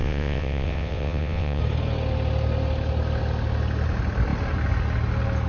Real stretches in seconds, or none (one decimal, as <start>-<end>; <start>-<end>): 1.6-5.5